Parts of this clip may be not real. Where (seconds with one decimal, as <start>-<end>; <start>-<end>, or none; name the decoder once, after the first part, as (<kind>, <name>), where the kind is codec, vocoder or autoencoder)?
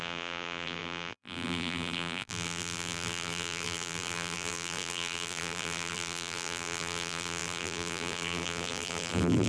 0.0-9.5 (vocoder, BigVGAN v2)